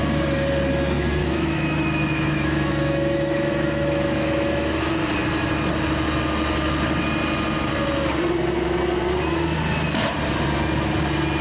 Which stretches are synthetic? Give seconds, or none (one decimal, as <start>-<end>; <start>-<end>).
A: 1.2-4.9